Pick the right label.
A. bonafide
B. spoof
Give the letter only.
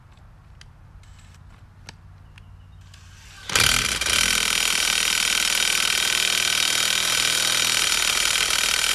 A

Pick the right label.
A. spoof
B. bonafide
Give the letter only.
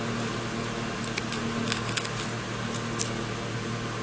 B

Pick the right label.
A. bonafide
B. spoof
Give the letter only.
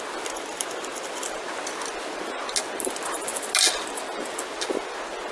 A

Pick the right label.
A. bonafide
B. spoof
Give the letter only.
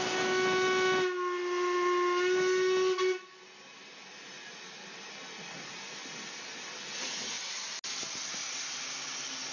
A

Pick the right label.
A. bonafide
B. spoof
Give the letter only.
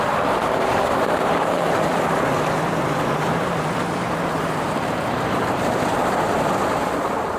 B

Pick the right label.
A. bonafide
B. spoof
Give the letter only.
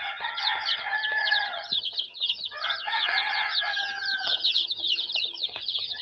B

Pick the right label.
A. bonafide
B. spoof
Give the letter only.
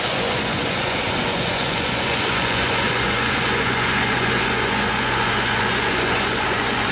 B